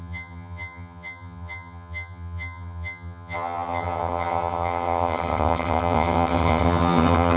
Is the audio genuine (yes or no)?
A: no